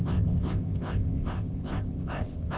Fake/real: fake